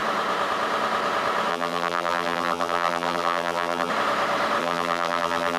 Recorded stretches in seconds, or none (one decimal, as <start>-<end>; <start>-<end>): 0.0-1.5; 3.9-4.6